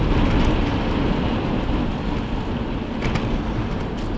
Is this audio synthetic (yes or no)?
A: no